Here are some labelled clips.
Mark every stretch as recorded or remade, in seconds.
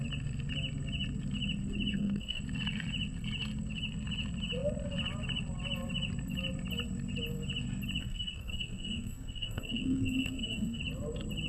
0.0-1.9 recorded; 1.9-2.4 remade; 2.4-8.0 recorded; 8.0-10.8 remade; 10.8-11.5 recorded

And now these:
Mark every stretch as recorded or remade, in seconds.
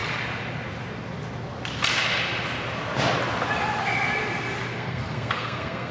0.0-4.7 recorded; 4.7-5.9 remade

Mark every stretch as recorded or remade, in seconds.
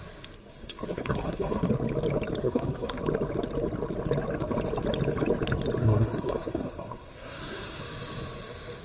0.0-0.5 recorded; 0.5-1.7 remade; 1.7-2.4 recorded; 2.4-3.0 remade; 3.0-5.8 recorded; 5.8-7.8 remade; 7.8-8.8 recorded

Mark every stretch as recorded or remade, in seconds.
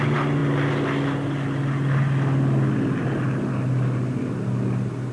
0.0-5.1 recorded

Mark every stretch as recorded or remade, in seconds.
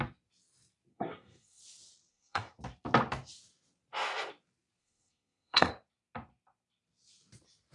0.0-0.9 recorded; 0.9-1.6 remade; 1.6-2.1 recorded; 2.1-2.6 remade; 2.6-4.8 recorded; 4.8-5.7 remade; 5.7-7.7 recorded